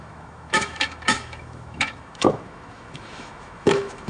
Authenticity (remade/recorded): remade